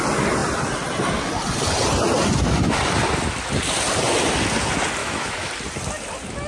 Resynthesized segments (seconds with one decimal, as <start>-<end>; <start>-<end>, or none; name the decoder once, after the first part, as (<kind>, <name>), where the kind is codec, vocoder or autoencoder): 5.0-5.5 (autoencoder, DAC-VAE)